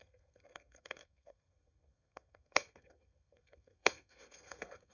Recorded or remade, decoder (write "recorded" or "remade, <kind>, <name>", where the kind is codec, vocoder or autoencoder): remade, codec, SNAC